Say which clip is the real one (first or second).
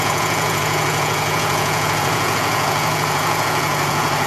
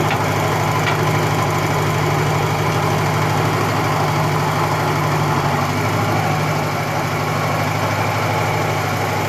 second